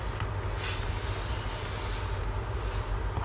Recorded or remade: recorded